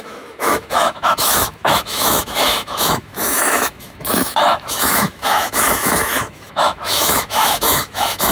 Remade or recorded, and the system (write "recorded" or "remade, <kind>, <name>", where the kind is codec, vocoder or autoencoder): remade, autoencoder, DAC-VAE